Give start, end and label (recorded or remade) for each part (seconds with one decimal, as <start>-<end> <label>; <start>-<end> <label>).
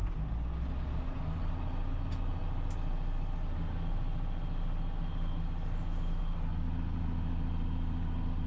0.0-8.5 recorded